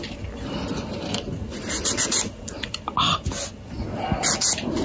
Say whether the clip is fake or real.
real